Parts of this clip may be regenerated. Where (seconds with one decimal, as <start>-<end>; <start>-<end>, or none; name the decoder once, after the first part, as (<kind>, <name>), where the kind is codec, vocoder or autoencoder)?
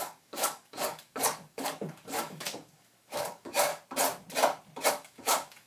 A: 0.0-3.7 (codec, DAC); 4.9-5.7